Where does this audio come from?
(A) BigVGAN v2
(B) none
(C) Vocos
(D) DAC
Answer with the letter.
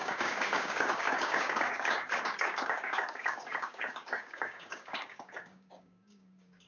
D